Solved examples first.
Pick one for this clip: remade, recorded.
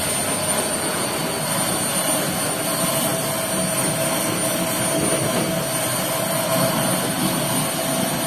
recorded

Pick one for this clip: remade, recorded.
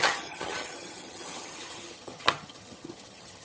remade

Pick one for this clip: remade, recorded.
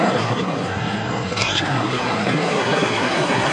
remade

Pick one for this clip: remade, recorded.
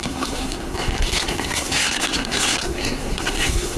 remade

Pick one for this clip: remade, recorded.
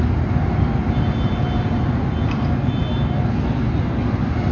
recorded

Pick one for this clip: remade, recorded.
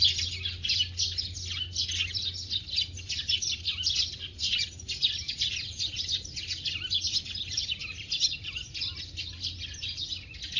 recorded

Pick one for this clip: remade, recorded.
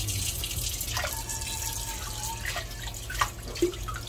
recorded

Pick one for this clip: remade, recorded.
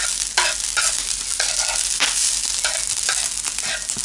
recorded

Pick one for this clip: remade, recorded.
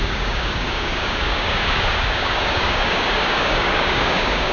remade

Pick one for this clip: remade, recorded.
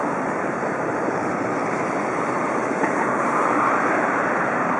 remade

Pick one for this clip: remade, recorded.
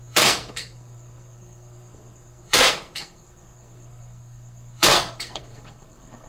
remade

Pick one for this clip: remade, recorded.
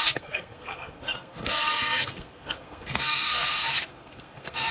remade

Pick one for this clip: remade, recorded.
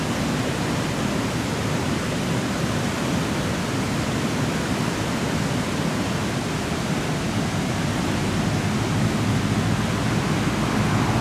recorded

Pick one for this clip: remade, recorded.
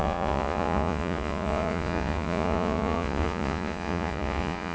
remade